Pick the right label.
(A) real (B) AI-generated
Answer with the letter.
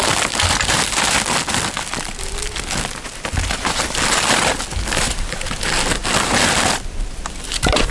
A